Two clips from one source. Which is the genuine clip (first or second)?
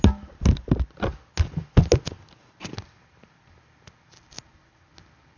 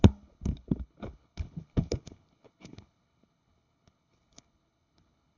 first